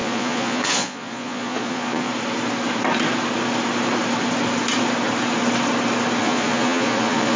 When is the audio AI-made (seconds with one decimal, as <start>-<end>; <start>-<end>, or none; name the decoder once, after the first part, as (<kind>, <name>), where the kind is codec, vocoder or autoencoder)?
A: 0.0-2.1 (vocoder, Vocos); 6.2-7.4